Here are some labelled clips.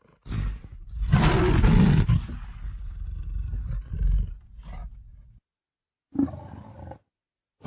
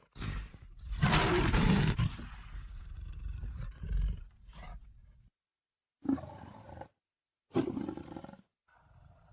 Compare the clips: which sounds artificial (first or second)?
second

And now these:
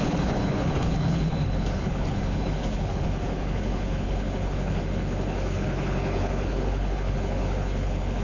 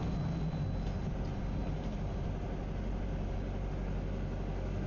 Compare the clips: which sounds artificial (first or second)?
first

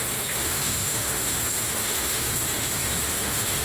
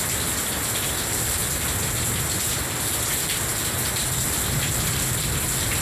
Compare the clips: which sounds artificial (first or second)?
first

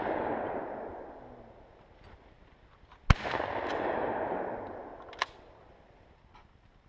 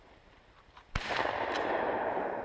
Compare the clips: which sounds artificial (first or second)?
second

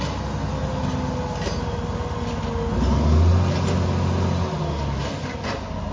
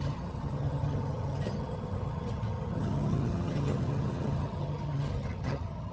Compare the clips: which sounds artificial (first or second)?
second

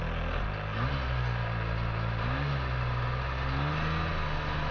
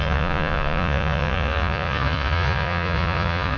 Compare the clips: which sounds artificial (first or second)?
second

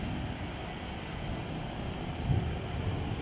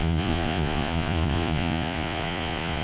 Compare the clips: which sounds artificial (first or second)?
second